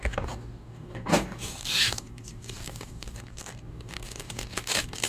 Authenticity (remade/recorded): remade